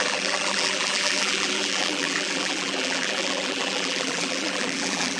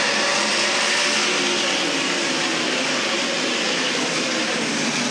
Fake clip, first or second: first